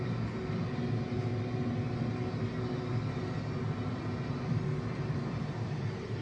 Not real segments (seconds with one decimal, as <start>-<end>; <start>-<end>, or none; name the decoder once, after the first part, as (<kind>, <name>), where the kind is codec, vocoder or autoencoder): 0.0-1.3 (vocoder, BigVGAN v2); 5.0-6.2